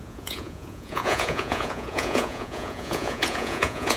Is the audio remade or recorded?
remade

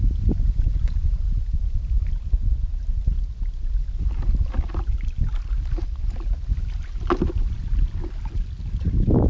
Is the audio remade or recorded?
recorded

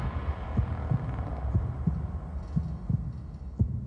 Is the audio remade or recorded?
recorded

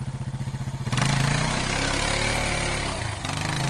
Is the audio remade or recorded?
recorded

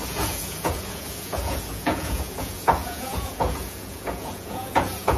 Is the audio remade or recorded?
remade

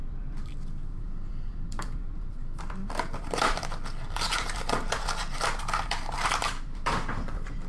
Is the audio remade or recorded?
remade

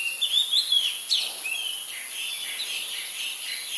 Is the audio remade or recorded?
recorded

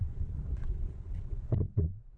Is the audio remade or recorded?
remade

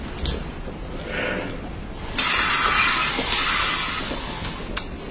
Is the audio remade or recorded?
recorded